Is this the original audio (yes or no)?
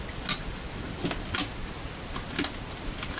yes